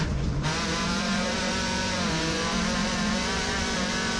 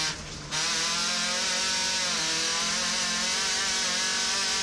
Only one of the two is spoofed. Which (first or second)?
first